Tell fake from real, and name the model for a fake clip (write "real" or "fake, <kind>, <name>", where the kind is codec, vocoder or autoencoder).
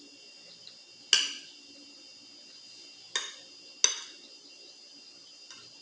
real